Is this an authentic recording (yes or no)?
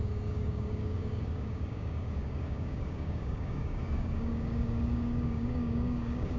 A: no